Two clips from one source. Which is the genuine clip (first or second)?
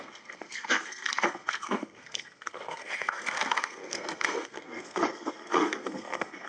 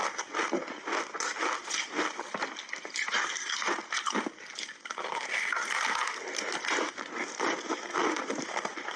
second